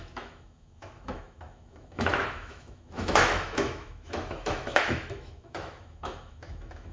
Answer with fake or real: fake